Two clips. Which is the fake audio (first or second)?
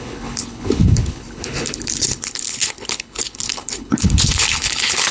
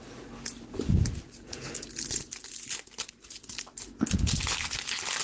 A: first